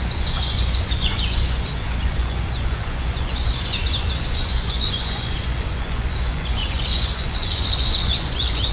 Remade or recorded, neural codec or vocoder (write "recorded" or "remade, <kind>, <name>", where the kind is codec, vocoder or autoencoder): remade, vocoder, Vocos